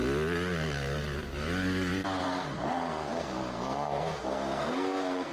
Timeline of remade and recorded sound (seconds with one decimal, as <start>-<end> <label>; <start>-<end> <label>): 0.0-2.2 recorded; 2.2-5.3 remade